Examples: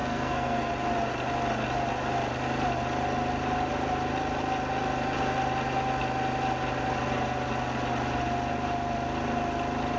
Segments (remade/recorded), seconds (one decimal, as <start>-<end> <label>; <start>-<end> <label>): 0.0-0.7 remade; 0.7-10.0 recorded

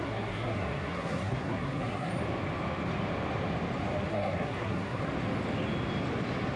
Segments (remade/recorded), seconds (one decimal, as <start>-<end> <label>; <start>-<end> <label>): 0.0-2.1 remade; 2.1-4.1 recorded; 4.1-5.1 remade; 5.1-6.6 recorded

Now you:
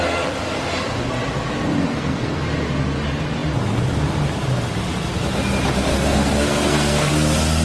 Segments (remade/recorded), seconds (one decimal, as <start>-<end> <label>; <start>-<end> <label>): 0.0-1.7 recorded; 1.7-2.4 remade; 2.4-5.9 recorded; 5.9-7.1 remade; 7.1-7.6 recorded

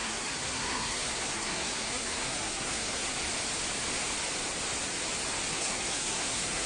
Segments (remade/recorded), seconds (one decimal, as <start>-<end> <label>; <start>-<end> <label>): 0.0-3.2 remade; 3.2-5.5 recorded; 5.5-6.7 remade

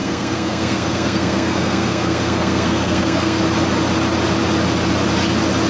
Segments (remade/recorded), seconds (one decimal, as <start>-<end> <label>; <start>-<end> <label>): 0.0-3.4 remade; 3.4-5.7 recorded